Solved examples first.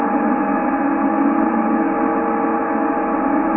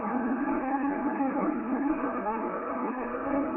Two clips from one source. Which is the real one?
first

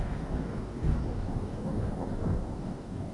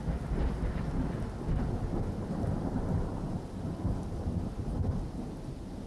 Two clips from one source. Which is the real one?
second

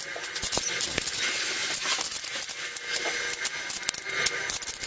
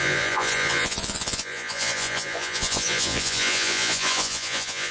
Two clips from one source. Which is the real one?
first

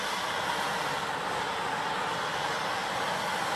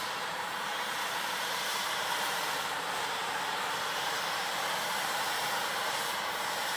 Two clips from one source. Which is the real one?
first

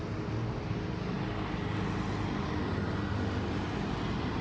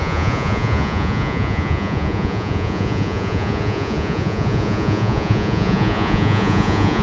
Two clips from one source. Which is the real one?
first